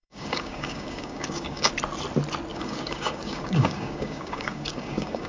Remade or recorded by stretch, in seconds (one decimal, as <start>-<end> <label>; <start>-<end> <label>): 0.0-1.7 remade; 1.7-2.5 recorded; 2.5-5.3 remade